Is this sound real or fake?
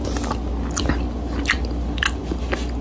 real